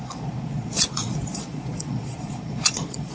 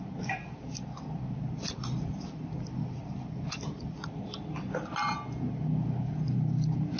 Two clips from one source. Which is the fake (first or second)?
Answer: first